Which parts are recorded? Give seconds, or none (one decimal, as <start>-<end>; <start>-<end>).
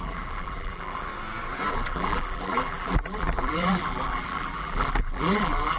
1.1-1.7